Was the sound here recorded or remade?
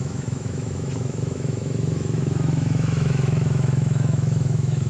remade